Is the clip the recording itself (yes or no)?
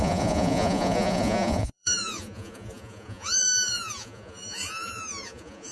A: no